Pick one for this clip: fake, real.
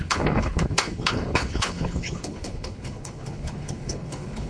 fake